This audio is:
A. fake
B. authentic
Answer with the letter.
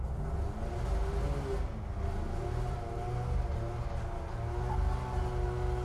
B